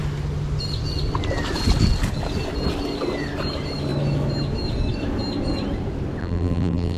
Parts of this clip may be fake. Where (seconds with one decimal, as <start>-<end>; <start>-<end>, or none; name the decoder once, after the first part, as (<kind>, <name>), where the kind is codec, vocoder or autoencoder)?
6.2-7.0 (vocoder, BigVGAN v2)